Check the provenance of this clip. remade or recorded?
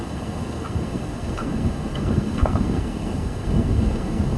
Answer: remade